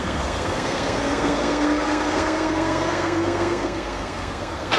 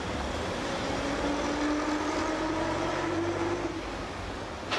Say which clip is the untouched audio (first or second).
second